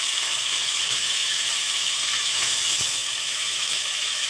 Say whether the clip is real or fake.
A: fake